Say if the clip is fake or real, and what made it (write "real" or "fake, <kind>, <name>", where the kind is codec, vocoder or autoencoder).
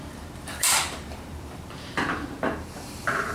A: fake, vocoder, BigVGAN v2